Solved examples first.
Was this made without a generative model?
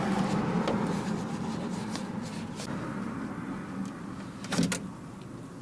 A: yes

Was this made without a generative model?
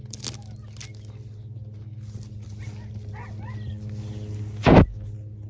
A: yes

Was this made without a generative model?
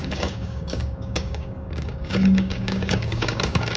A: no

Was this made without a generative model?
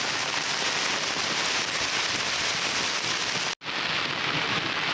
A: yes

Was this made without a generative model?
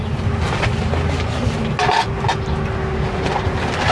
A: yes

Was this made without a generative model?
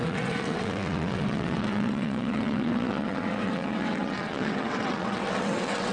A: no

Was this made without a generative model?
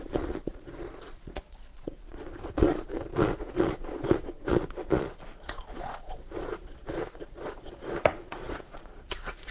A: no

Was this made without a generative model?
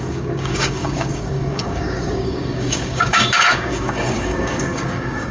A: no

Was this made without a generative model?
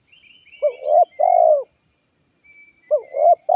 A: yes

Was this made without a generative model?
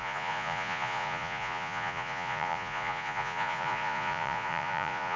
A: no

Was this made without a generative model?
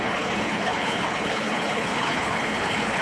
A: no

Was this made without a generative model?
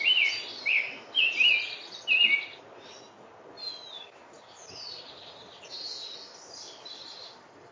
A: yes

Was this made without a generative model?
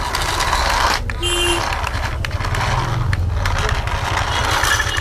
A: yes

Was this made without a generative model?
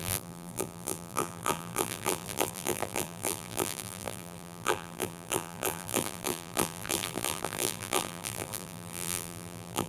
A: no